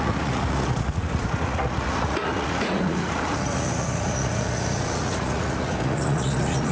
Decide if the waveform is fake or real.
fake